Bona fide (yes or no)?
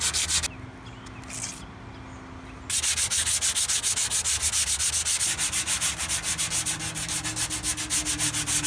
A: yes